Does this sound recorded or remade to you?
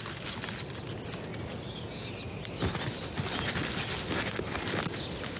recorded